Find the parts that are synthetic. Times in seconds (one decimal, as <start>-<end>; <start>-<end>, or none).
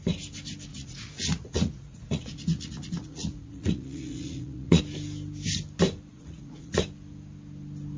0.7-4.8; 6.1-6.8